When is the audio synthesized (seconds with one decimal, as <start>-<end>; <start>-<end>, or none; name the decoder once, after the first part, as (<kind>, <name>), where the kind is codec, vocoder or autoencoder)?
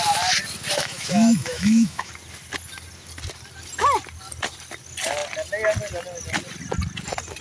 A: 0.8-2.1 (autoencoder, DAC-VAE)